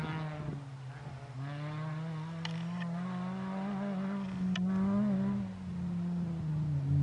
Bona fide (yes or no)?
yes